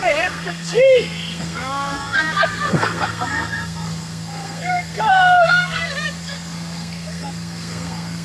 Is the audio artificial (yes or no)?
yes